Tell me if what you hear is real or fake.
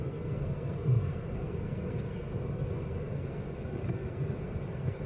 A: fake